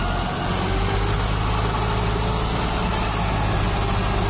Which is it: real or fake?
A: real